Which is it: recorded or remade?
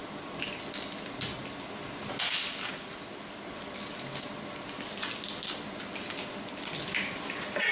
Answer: recorded